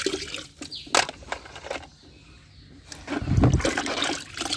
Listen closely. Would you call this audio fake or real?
real